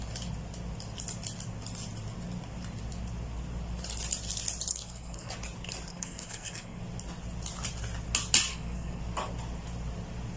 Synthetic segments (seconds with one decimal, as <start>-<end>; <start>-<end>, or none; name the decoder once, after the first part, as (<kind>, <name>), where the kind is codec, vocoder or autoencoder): 4.7-5.3 (codec, SNAC); 5.9-6.8; 8.5-9.0